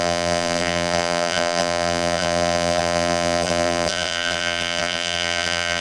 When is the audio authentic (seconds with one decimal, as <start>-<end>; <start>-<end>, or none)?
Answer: none